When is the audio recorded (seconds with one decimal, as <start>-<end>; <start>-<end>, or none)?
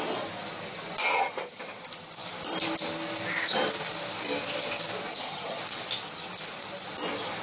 0.0-1.1; 1.6-5.1; 5.6-7.4